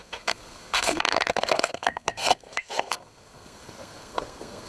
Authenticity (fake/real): fake